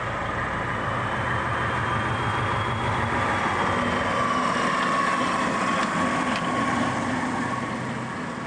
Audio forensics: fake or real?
real